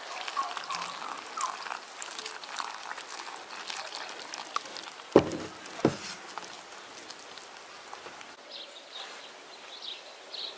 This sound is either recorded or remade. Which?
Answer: recorded